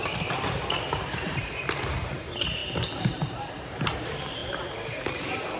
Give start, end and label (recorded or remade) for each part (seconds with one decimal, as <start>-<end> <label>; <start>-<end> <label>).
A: 0.0-5.6 remade